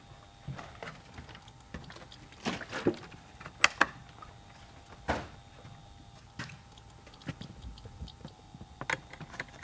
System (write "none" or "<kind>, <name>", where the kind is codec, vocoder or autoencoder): none